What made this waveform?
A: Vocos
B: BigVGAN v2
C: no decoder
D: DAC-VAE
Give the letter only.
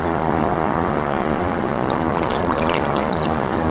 A